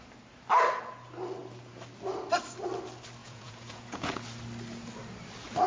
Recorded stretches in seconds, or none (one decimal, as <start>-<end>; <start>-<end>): 0.0-3.2; 4.2-5.7